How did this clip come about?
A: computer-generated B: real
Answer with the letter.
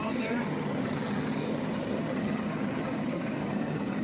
A